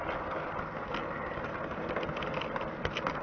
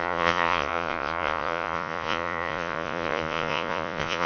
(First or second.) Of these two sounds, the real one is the first